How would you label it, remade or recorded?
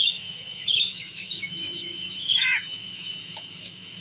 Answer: remade